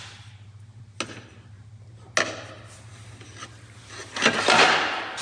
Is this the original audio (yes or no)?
yes